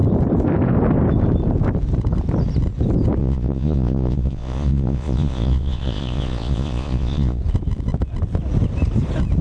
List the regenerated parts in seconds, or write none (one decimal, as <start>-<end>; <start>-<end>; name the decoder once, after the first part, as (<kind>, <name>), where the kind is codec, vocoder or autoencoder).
3.2-7.4 (vocoder, Vocos)